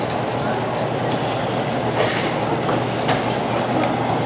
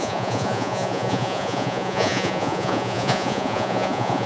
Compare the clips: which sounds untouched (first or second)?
first